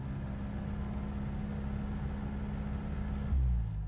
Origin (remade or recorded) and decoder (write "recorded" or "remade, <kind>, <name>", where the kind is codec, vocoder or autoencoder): recorded